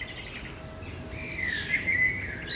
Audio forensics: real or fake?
real